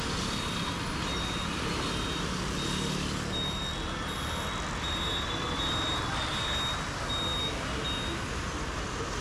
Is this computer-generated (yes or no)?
no